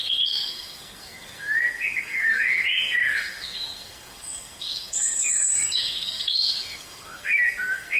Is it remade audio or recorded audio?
remade